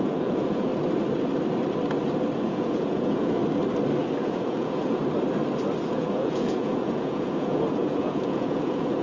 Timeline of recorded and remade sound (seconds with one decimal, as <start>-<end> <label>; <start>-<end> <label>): 0.0-0.7 remade; 0.7-2.4 recorded; 2.4-3.4 remade; 3.4-4.2 recorded; 4.2-5.0 remade; 5.0-5.9 recorded; 5.9-9.0 remade